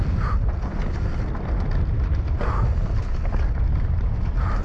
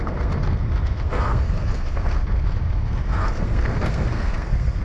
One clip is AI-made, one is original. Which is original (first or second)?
first